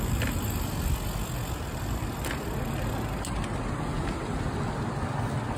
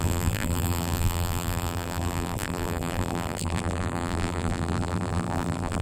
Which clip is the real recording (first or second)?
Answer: first